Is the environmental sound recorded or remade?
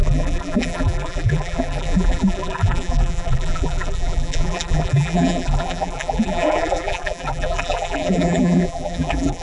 remade